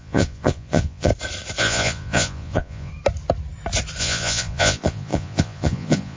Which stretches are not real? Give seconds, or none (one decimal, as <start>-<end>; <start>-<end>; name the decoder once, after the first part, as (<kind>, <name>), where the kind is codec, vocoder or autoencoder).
0.0-1.1 (vocoder, Vocos); 1.6-2.9; 4.0-6.2

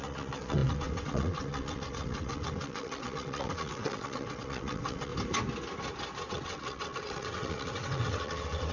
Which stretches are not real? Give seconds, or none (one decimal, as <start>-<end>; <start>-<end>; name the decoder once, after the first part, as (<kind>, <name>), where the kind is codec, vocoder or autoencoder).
0.0-5.1 (vocoder, WaveNeXt); 6.3-8.7

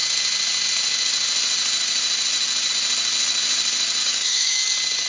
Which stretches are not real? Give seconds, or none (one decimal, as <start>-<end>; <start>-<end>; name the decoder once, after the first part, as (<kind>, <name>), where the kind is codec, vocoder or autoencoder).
4.0-4.6 (codec, DAC)

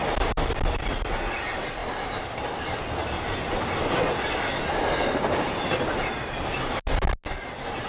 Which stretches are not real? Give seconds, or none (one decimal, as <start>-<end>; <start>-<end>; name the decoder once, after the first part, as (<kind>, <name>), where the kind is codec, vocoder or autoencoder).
none

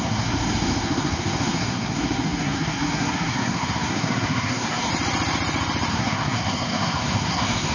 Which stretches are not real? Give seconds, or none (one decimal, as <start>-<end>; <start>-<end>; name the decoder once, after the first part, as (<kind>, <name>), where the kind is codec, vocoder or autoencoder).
0.0-4.9 (codec, SNAC); 5.9-7.7